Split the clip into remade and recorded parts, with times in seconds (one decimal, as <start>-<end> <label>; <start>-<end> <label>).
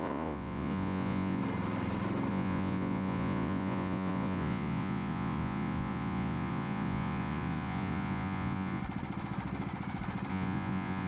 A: 0.0-1.4 remade; 1.4-2.3 recorded; 2.3-8.8 remade; 8.8-10.3 recorded; 10.3-11.1 remade